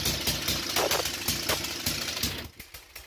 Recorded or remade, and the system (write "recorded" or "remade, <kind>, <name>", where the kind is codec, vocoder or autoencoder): recorded